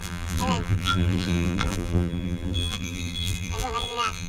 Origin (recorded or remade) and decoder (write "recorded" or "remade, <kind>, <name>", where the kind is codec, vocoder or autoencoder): remade, vocoder, BigVGAN v2